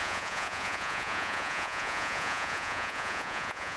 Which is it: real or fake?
fake